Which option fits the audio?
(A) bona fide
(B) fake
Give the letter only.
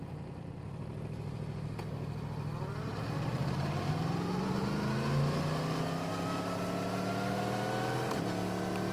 A